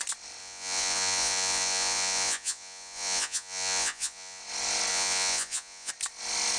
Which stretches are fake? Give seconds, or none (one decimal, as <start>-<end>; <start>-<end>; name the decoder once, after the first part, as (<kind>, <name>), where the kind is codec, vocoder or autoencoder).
0.4-4.4 (vocoder, Vocos); 4.9-5.9